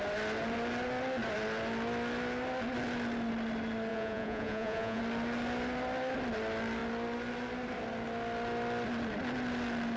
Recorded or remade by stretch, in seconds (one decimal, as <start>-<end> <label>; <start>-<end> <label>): 0.0-3.9 recorded; 3.9-5.0 remade; 5.0-10.0 recorded